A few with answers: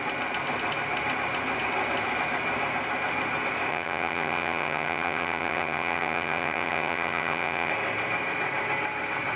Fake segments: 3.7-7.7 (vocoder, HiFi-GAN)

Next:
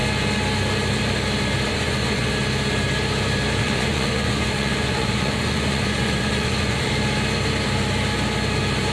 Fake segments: 1.7-2.3 (vocoder, Vocos); 3.6-6.9

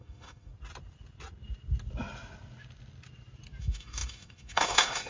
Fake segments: 0.0-0.5 (autoencoder, DAC-VAE); 3.6-5.1

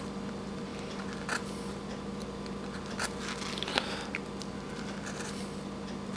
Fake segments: none